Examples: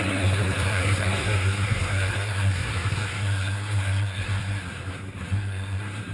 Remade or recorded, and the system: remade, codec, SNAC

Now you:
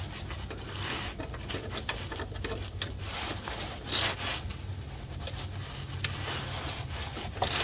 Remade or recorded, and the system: recorded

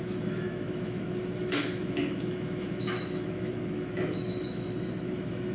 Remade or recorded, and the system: remade, autoencoder, DAC-VAE